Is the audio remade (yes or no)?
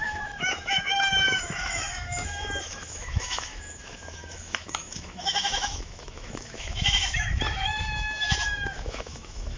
yes